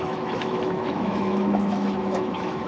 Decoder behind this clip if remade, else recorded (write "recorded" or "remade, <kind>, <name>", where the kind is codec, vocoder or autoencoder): remade, autoencoder, DAC-VAE